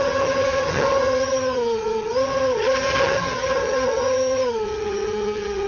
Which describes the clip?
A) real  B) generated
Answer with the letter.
B